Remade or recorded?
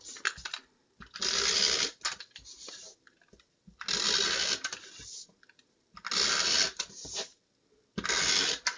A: recorded